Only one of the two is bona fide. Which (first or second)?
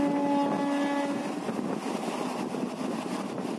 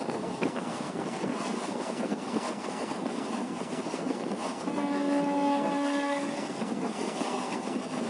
first